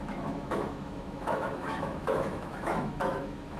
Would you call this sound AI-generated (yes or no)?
yes